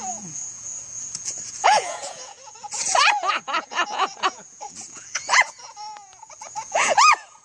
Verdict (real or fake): fake